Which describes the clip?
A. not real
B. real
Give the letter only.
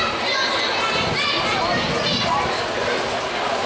B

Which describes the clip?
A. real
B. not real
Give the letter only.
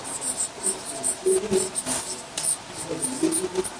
A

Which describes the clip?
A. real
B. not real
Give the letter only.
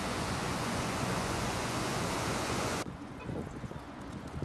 B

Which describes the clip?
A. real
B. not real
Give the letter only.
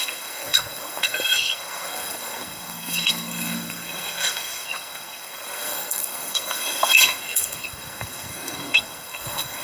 B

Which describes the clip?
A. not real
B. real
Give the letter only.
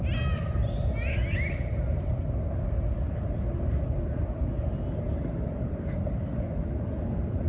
B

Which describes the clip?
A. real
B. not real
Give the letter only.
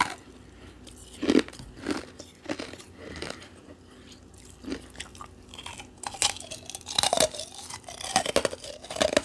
A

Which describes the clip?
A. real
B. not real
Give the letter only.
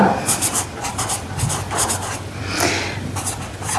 B